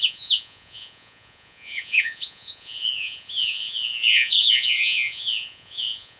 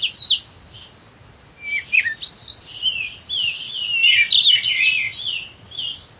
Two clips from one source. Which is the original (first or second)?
second